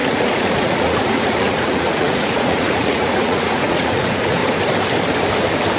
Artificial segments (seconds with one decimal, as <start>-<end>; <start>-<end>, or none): 0.0-4.4